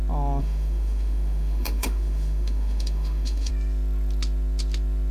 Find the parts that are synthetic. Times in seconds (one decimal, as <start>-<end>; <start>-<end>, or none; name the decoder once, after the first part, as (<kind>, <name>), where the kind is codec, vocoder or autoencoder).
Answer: 0.4-3.5 (autoencoder, DAC-VAE)